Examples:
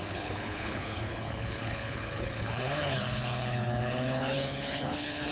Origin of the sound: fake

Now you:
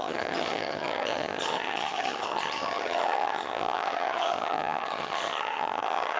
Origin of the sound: fake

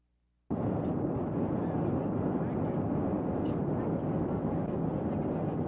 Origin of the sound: real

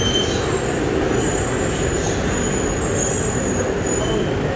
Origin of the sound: real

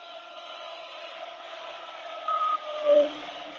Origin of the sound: fake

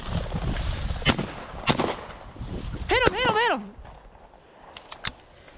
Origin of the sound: real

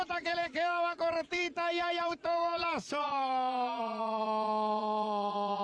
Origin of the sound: fake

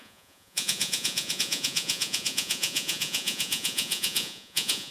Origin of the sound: fake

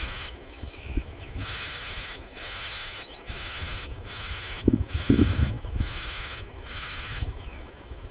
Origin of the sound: fake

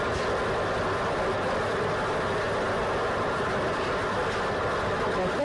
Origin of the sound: real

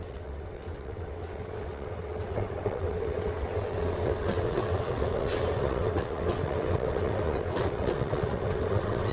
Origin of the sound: fake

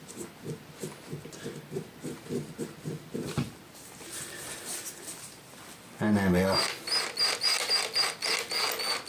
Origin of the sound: real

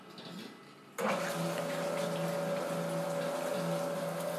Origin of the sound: real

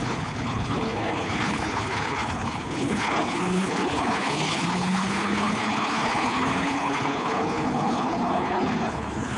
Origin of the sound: fake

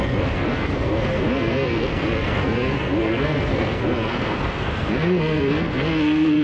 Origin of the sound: fake